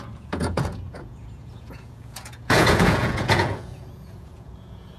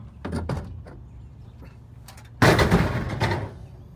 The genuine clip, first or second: second